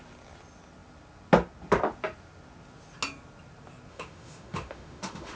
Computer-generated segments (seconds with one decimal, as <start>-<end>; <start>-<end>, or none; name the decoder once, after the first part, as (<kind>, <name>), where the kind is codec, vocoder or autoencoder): 3.9-5.4 (autoencoder, DAC-VAE)